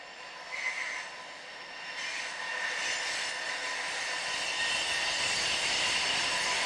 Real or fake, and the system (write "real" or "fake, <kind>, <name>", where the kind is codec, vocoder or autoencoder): real